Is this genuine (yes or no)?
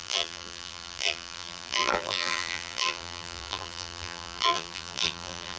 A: no